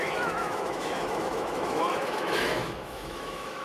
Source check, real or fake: fake